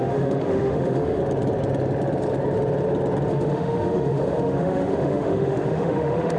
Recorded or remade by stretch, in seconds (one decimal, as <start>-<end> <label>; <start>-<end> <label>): 0.0-1.2 remade; 1.2-3.3 recorded; 3.3-6.4 remade